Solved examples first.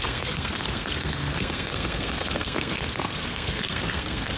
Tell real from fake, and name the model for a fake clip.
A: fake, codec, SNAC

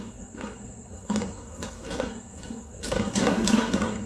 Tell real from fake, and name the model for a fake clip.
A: fake, codec, SNAC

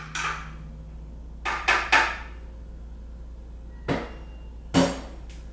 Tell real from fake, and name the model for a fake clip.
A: real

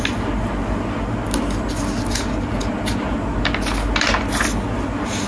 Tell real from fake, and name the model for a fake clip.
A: real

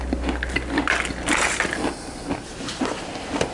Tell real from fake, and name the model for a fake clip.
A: real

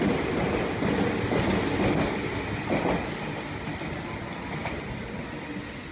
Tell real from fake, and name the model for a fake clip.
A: real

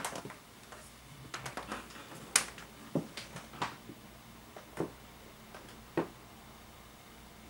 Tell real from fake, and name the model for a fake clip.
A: real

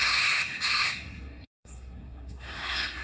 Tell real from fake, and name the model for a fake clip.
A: fake, codec, SNAC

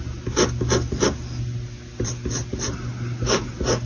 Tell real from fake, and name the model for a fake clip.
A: real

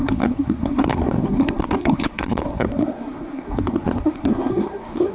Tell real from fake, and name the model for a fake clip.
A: fake, codec, SNAC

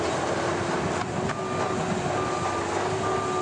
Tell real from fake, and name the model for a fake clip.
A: real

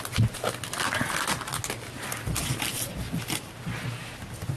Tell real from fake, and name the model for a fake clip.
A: real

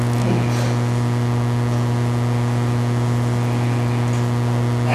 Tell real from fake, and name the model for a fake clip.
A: real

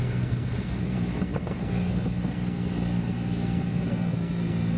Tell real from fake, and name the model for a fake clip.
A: fake, codec, SNAC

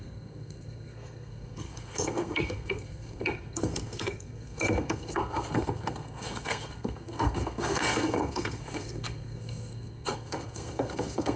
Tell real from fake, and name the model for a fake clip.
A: fake, codec, SNAC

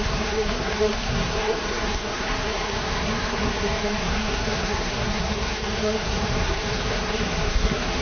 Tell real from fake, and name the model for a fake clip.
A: fake, codec, SNAC